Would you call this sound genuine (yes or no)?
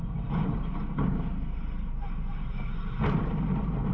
yes